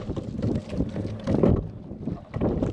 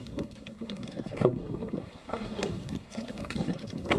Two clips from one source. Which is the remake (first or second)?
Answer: second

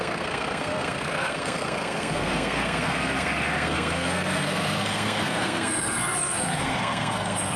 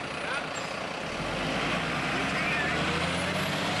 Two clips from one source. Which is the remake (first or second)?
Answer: first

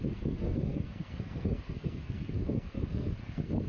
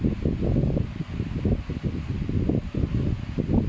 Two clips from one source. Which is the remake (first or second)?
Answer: first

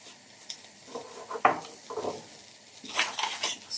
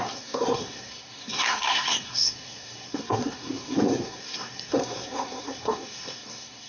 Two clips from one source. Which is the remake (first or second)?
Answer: second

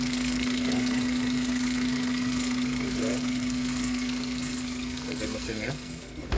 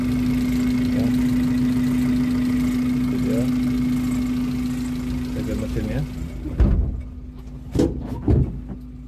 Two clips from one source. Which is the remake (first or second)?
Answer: first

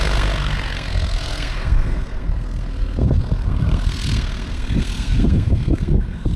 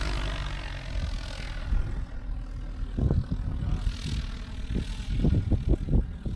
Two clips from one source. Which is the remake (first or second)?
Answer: first